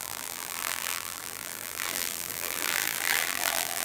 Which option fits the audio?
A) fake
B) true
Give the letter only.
A